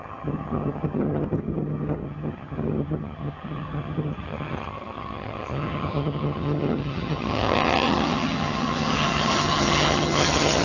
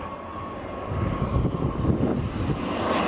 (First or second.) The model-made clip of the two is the first